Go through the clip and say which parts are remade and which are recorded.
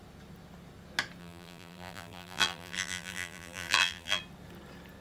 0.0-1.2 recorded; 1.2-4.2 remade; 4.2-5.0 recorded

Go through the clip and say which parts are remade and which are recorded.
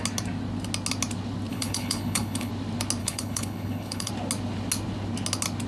0.0-1.5 recorded; 1.5-2.5 remade; 2.5-3.0 recorded; 3.0-4.1 remade; 4.1-5.7 recorded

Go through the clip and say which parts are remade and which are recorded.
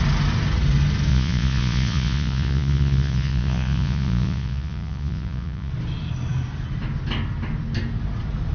0.0-1.1 recorded; 1.1-5.7 remade; 5.7-8.5 recorded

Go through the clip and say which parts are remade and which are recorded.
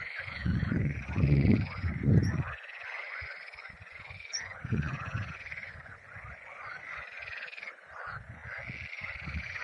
0.0-8.4 remade; 8.4-8.9 recorded; 8.9-9.6 remade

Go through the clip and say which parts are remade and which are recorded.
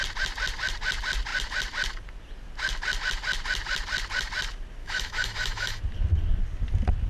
0.0-4.8 recorded; 4.8-5.8 remade; 5.8-7.1 recorded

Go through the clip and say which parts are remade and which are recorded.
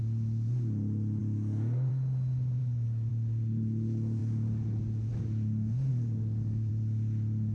0.0-1.2 recorded; 1.2-1.9 remade; 1.9-2.6 recorded; 2.6-3.1 remade; 3.1-5.9 recorded; 5.9-6.7 remade; 6.7-7.5 recorded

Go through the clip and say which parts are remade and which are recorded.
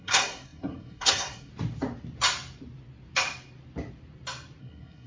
0.0-1.5 remade; 1.5-4.6 recorded; 4.6-5.1 remade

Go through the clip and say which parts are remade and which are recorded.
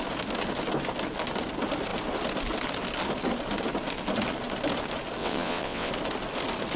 0.0-5.2 recorded; 5.2-5.9 remade; 5.9-6.8 recorded